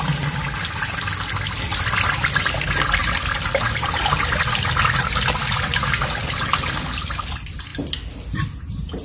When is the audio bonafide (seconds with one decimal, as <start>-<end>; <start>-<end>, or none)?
0.0-1.7; 2.4-9.0